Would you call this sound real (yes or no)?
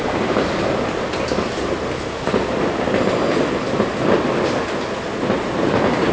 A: yes